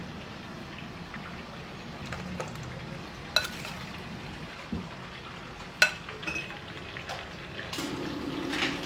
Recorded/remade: recorded